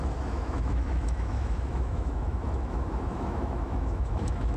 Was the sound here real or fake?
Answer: fake